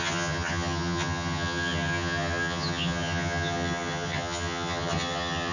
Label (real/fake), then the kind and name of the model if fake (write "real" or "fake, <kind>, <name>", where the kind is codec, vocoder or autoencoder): fake, vocoder, HiFi-GAN